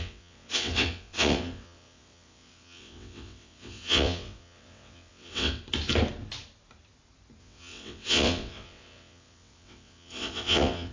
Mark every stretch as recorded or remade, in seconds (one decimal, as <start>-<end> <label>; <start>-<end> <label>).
0.0-5.6 remade; 5.6-7.4 recorded; 7.4-10.9 remade